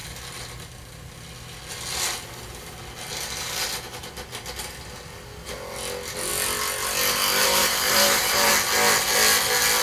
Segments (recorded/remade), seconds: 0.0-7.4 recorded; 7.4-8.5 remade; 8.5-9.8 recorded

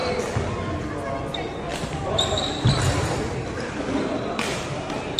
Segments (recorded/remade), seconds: 0.0-1.7 recorded; 1.7-4.8 remade; 4.8-5.2 recorded

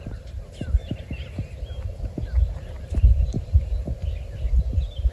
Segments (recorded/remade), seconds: 0.0-0.8 remade; 0.8-3.0 recorded; 3.0-3.7 remade; 3.7-4.6 recorded; 4.6-5.1 remade